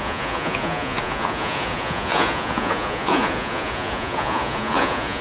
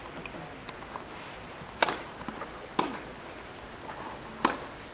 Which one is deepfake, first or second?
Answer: first